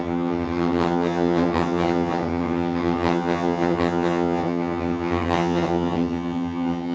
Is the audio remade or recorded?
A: remade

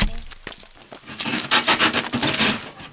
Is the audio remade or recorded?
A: recorded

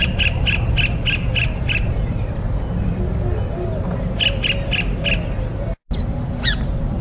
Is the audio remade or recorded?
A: recorded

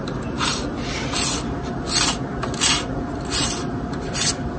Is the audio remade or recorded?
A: recorded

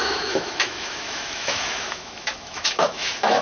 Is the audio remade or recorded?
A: remade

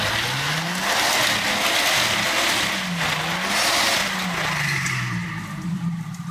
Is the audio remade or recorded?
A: recorded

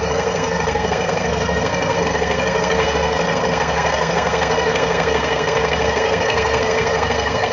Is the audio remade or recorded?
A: remade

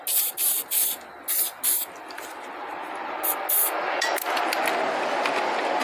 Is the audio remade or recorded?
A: recorded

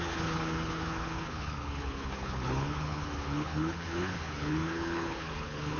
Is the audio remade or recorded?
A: remade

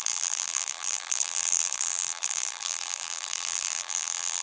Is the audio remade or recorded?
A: remade